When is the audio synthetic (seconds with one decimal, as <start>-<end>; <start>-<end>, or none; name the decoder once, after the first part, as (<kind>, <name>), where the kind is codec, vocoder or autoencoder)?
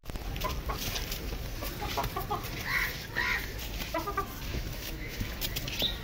4.5-5.4 (autoencoder, DAC-VAE)